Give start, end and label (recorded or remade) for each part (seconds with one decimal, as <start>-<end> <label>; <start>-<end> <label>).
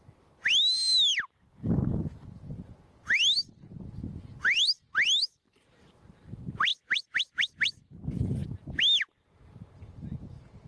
0.0-6.7 recorded; 6.7-7.9 remade; 7.9-10.7 recorded